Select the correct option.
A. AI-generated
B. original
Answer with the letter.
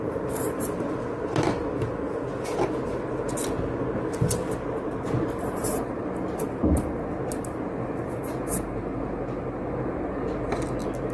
B